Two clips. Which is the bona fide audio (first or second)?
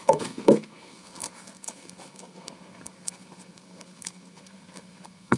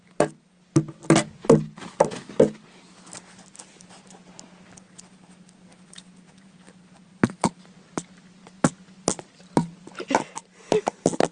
second